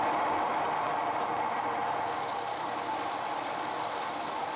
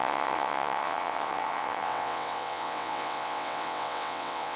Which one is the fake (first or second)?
second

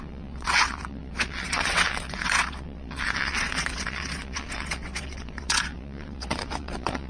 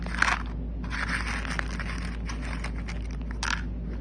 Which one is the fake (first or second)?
first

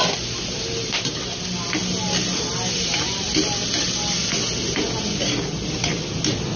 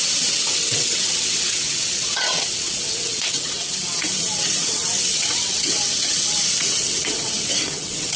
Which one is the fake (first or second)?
second